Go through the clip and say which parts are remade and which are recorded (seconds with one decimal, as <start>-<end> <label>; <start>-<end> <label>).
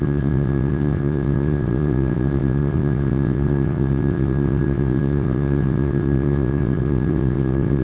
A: 0.0-7.8 remade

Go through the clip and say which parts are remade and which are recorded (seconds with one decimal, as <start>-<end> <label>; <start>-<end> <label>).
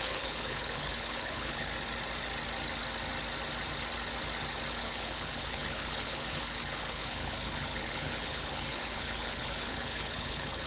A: 0.0-1.7 remade; 1.7-4.8 recorded; 4.8-10.7 remade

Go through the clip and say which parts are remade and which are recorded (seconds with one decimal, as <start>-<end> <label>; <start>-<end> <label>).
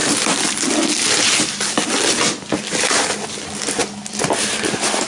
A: 0.0-5.1 recorded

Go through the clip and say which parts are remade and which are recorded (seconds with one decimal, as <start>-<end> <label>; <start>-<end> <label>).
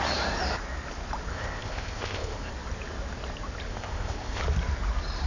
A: 0.0-1.3 recorded; 1.3-2.5 remade; 2.5-3.7 recorded; 3.7-4.4 remade; 4.4-5.3 recorded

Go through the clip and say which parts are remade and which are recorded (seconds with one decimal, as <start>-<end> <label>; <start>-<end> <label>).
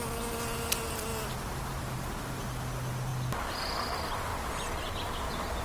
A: 0.0-5.6 recorded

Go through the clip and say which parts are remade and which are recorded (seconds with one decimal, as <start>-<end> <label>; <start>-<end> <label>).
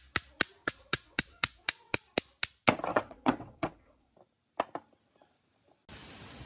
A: 0.0-0.6 recorded; 0.6-2.0 remade; 2.0-2.9 recorded; 2.9-4.1 remade; 4.1-6.5 recorded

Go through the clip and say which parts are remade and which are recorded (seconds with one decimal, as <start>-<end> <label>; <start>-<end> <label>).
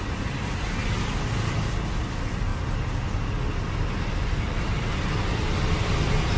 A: 0.0-6.4 recorded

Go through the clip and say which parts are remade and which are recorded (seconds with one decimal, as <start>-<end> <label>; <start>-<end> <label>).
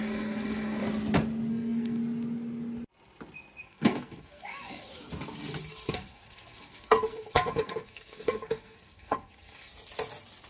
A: 0.0-0.8 remade; 0.8-1.5 recorded; 1.5-2.0 remade; 2.0-3.6 recorded; 3.6-4.9 remade; 4.9-5.9 recorded; 5.9-9.7 remade; 9.7-10.5 recorded